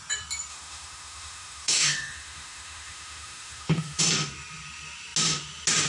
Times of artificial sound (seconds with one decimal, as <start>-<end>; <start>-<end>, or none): 0.5-4.0